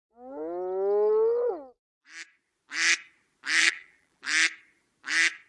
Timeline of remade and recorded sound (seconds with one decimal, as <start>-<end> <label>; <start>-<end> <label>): 0.0-3.6 recorded; 3.6-4.2 remade; 4.2-5.5 recorded